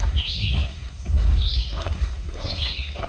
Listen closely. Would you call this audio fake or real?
fake